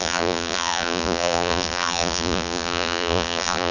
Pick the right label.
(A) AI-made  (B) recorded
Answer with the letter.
A